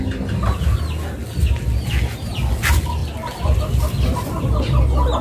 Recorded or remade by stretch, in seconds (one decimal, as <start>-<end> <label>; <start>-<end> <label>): 0.0-5.2 recorded